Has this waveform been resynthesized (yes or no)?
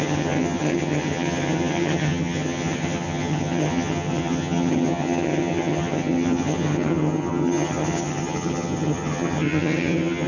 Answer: yes